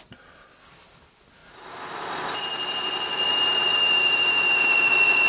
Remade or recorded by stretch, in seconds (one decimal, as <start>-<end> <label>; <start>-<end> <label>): 0.0-5.3 recorded